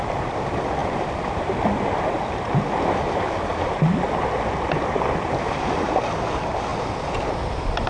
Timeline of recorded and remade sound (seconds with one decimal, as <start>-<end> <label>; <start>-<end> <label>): 0.0-0.8 recorded; 0.8-3.0 remade; 3.0-3.5 recorded; 3.5-4.8 remade; 4.8-6.7 recorded; 6.7-7.9 remade